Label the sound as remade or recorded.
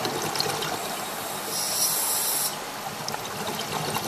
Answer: recorded